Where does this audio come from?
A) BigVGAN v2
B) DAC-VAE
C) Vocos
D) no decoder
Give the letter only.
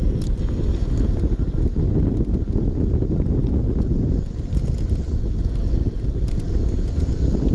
D